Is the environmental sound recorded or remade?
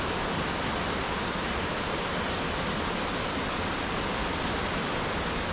recorded